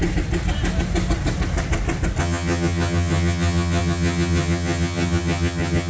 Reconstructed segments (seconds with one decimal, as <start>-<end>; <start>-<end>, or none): 2.2-5.9